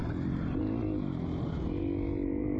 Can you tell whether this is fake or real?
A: real